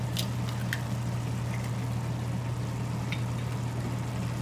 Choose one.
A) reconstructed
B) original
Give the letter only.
B